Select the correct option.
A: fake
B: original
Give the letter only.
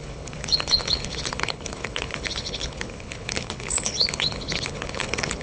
A